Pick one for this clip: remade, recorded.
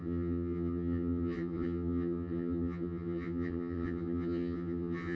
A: remade